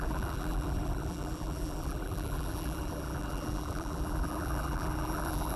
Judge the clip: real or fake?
fake